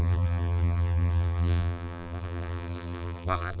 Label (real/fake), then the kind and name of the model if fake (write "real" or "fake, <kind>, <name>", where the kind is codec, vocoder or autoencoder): fake, vocoder, BigVGAN v2